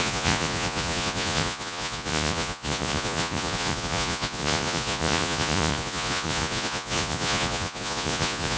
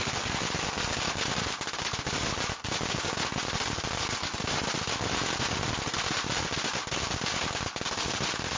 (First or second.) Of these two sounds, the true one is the second